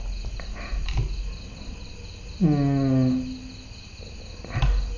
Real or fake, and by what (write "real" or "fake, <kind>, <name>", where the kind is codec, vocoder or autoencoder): real